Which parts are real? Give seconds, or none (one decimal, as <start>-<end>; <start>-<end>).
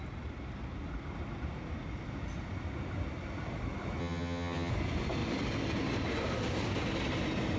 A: 0.0-4.0; 4.7-7.6